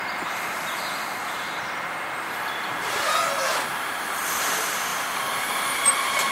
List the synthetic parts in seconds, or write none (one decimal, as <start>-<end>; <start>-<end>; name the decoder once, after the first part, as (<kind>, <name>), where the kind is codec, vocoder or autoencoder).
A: 1.2-3.1 (vocoder, BigVGAN v2); 3.5-4.2; 4.9-6.3